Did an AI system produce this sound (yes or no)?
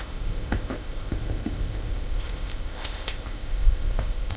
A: yes